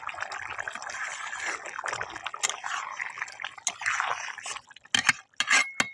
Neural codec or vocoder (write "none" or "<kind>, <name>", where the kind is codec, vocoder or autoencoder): none